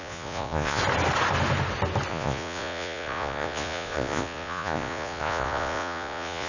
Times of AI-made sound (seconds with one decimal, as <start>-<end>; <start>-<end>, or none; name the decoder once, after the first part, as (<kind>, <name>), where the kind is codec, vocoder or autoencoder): 0.0-0.8 (vocoder, Vocos); 2.1-6.5